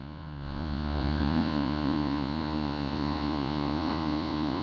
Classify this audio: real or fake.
fake